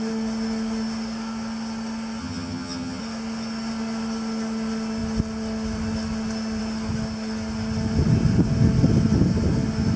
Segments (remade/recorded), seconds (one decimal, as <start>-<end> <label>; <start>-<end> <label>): 0.0-2.2 recorded; 2.2-3.0 remade; 3.0-10.0 recorded